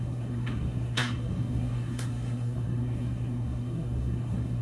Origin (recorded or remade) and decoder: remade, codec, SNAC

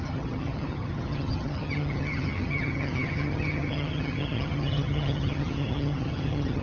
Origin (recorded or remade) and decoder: remade, vocoder, HiFi-GAN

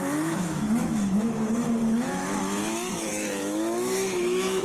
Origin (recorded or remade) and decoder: remade, autoencoder, DAC-VAE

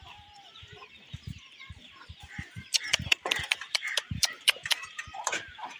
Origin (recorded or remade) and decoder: remade, vocoder, BigVGAN v2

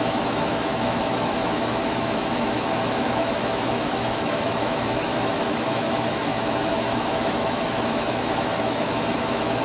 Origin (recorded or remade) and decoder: remade, autoencoder, DAC-VAE